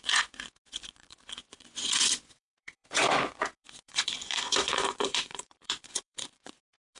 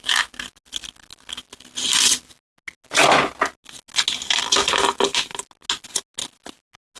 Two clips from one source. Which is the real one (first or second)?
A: second